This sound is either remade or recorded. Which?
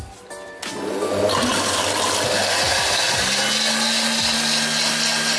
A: recorded